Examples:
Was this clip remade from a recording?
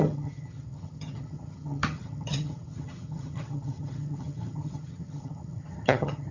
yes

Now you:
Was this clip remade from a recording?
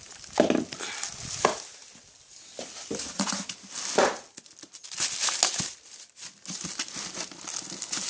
no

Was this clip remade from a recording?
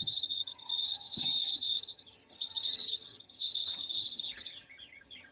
yes